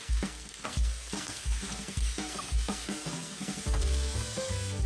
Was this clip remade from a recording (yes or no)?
yes